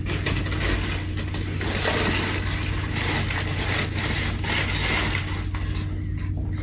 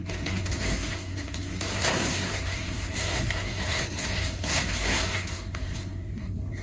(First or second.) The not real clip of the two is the second